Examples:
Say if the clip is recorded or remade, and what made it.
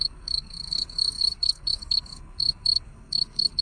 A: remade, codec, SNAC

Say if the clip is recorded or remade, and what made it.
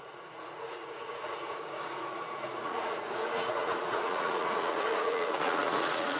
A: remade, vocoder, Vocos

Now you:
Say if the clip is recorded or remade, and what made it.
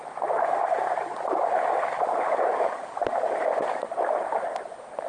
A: recorded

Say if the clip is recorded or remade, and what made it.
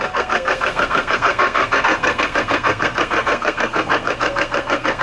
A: remade, codec, SNAC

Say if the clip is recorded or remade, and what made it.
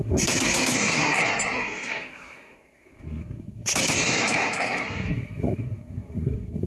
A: remade, codec, SNAC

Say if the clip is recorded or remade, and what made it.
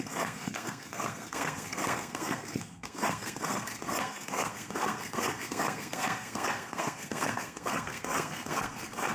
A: remade, codec, SNAC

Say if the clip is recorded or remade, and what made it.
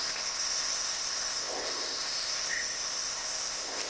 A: remade, codec, ZipCodec